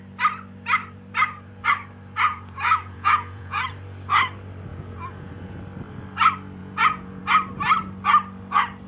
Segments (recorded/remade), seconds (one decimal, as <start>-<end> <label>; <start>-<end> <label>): 0.0-2.3 recorded; 2.3-3.7 remade; 3.7-4.7 recorded; 4.7-5.6 remade; 5.6-6.6 recorded; 6.6-7.2 remade; 7.2-8.9 recorded